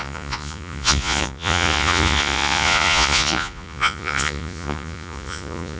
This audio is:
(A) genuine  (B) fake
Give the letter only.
B